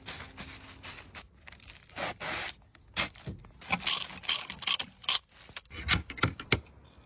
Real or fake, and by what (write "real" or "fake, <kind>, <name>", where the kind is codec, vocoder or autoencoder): real